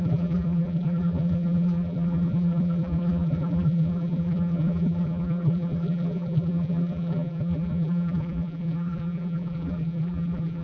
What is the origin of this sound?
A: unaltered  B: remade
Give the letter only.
B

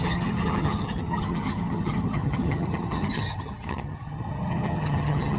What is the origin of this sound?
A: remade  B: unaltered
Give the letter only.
A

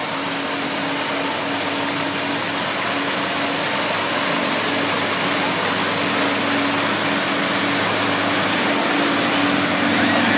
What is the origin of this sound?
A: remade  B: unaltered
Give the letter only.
B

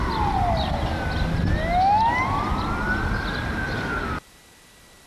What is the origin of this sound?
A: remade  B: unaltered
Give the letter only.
B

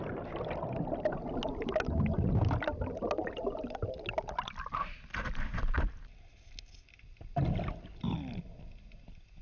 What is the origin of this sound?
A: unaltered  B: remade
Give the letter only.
A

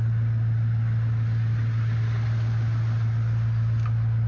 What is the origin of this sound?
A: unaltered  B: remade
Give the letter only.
A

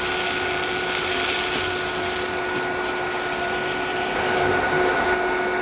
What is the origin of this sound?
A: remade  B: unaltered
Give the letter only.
B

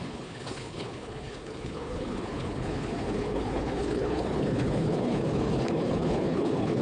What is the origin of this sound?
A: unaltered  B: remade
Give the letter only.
B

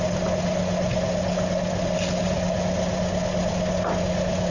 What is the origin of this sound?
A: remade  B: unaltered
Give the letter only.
B